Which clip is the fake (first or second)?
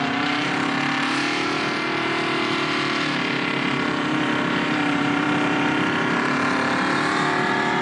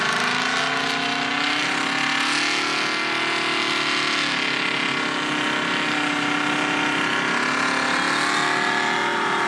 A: first